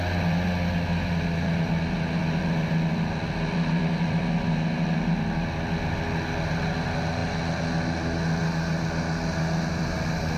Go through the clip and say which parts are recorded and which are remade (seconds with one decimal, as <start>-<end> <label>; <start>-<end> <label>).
0.0-10.4 recorded